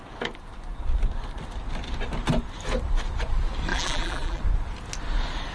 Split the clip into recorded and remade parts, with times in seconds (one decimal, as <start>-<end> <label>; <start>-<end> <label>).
0.0-3.7 recorded; 3.7-4.4 remade; 4.4-5.5 recorded